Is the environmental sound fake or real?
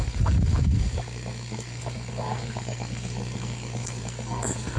fake